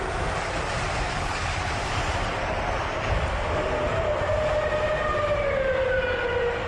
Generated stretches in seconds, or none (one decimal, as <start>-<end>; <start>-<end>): 1.1-1.7